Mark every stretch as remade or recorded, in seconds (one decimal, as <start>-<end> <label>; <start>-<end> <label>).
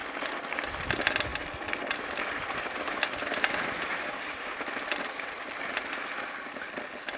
0.0-7.2 recorded